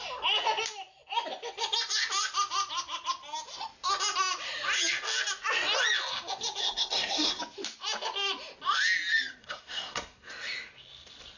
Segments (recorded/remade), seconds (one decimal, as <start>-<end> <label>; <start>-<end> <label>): 0.0-6.6 recorded; 6.6-7.4 remade; 7.4-9.4 recorded; 9.4-10.3 remade; 10.3-11.4 recorded